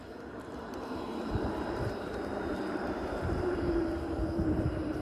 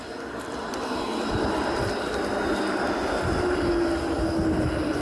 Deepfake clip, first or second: first